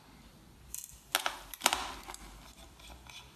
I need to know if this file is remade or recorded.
recorded